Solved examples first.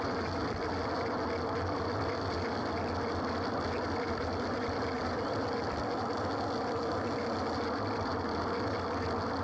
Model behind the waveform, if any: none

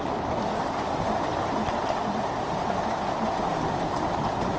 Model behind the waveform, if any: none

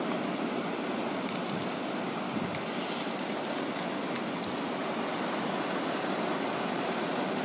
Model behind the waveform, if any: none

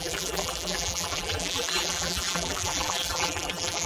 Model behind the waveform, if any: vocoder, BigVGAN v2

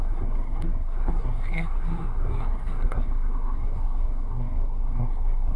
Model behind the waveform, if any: codec, SNAC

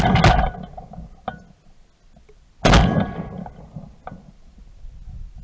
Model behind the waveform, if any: none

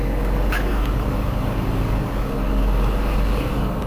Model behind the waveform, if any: codec, DAC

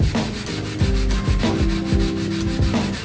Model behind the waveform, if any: none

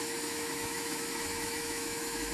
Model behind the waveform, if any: autoencoder, DAC-VAE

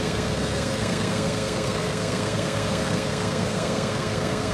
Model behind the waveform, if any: codec, SNAC